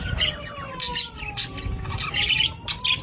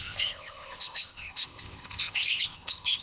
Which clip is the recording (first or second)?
first